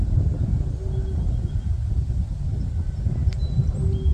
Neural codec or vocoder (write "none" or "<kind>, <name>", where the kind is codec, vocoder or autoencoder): none